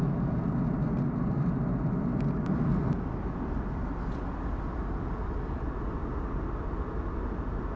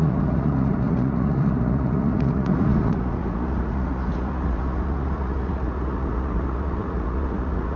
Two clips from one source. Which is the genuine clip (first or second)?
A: first